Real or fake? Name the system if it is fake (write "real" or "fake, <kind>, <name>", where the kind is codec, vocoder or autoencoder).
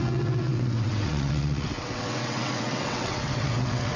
fake, vocoder, WaveNeXt